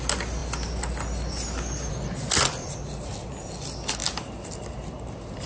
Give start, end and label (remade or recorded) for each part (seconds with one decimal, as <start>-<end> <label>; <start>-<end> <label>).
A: 0.0-5.5 recorded